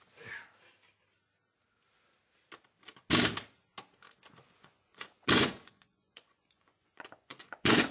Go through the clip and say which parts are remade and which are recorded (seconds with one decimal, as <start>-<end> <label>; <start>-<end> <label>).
0.0-4.4 recorded; 4.4-7.9 remade

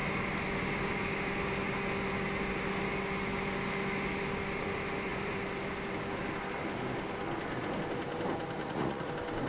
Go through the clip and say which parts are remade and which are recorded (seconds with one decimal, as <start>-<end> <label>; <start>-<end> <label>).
0.0-8.6 recorded; 8.6-9.1 remade; 9.1-9.5 recorded

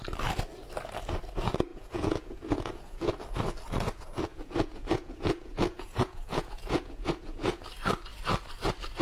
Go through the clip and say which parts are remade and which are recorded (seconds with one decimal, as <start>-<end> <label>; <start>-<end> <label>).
0.0-1.7 recorded; 1.7-3.1 remade; 3.1-4.3 recorded; 4.3-7.6 remade; 7.6-9.0 recorded

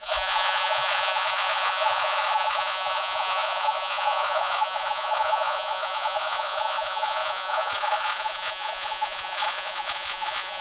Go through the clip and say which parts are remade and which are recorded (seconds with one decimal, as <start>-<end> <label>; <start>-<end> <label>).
0.0-10.6 remade

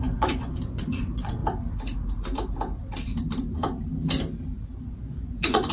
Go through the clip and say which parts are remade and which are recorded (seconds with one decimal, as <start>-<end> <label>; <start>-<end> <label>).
0.0-1.4 remade; 1.4-4.8 recorded; 4.8-5.7 remade

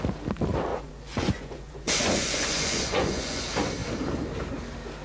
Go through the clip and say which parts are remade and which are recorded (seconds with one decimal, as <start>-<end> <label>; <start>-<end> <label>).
0.0-0.7 recorded; 0.7-3.4 remade; 3.4-5.0 recorded